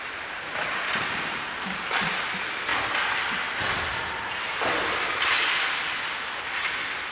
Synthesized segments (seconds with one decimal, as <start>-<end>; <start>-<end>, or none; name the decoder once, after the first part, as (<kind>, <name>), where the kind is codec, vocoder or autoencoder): none